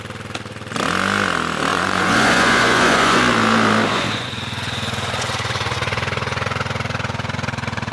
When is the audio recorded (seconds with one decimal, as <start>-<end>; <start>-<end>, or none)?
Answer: 0.0-1.7; 3.2-3.9